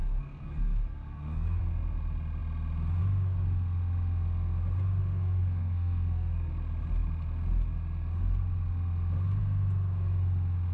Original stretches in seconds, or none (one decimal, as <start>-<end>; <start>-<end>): 1.6-5.0; 6.5-10.7